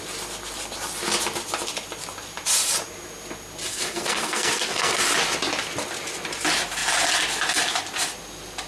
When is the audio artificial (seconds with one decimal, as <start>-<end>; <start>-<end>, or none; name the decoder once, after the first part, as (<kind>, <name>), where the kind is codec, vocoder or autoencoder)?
3.7-5.0 (codec, SNAC)